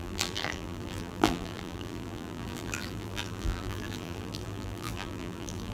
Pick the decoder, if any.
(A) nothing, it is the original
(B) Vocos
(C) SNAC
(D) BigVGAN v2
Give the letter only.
D